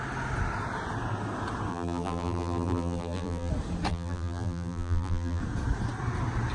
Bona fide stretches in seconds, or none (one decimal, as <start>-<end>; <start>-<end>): 0.0-1.7; 3.5-3.9; 5.4-6.5